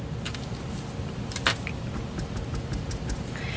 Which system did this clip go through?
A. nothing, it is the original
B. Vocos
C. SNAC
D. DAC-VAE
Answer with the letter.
A